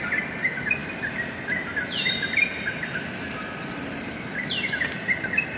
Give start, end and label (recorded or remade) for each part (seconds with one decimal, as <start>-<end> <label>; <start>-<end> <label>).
0.0-5.6 recorded